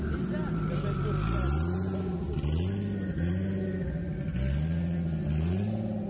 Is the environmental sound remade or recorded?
recorded